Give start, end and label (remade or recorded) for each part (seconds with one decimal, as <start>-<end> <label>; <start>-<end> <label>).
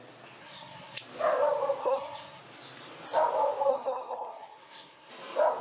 0.0-0.4 recorded; 0.4-1.0 remade; 1.0-1.8 recorded; 1.8-2.4 remade; 2.4-3.7 recorded; 3.7-5.1 remade; 5.1-5.6 recorded